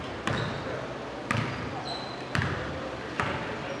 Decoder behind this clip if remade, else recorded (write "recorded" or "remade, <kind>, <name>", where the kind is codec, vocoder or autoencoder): recorded